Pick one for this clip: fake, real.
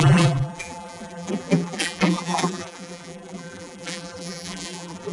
fake